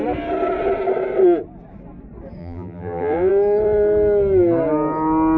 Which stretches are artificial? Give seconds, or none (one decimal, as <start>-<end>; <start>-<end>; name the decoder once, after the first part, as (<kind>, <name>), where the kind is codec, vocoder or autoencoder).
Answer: 2.4-3.3 (vocoder, BigVGAN v2)